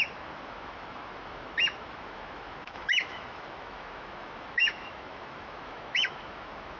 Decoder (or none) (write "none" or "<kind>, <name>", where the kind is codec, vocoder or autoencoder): autoencoder, DAC-VAE